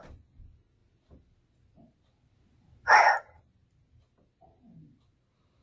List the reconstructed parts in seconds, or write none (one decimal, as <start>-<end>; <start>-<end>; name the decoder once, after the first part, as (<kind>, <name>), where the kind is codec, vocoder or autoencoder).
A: none